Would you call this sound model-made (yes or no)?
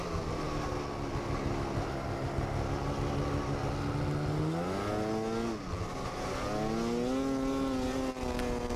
no